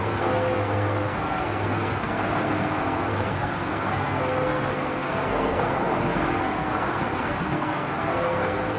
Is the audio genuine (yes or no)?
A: no